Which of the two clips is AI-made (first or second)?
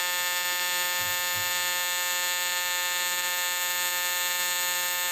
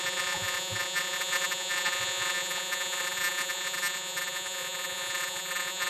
second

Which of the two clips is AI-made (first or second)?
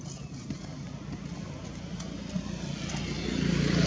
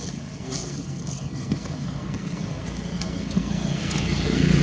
second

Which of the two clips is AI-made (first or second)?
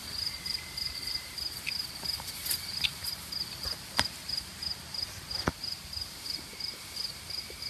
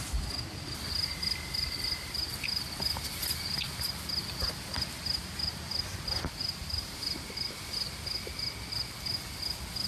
first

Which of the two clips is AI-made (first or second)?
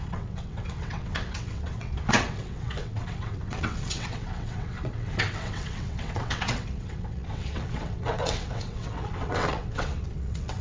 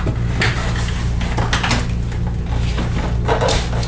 first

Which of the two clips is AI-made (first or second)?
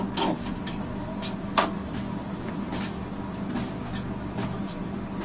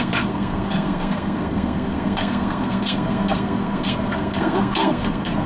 second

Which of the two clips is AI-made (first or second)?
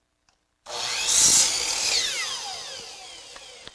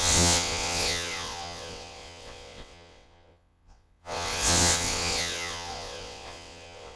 second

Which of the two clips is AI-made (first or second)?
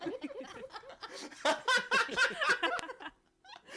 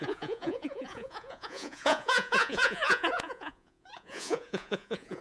second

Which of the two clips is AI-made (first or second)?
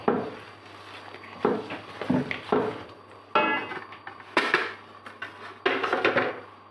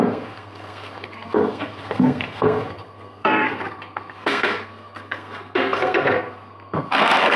second